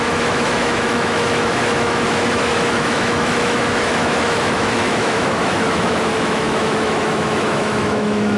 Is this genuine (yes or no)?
no